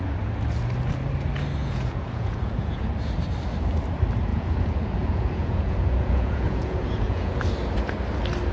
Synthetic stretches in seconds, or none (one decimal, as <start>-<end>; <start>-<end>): 1.6-2.9; 4.3-7.4